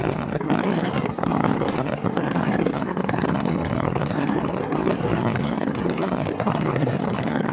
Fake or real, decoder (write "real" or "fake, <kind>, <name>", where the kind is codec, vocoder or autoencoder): fake, codec, SNAC